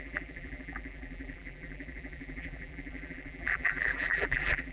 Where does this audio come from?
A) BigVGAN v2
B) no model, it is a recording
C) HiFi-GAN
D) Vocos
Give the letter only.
A